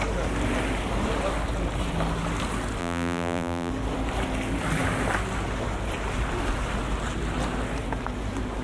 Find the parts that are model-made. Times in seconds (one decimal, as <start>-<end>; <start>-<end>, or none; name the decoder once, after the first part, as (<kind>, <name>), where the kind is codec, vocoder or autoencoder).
2.8-3.7 (vocoder, BigVGAN v2)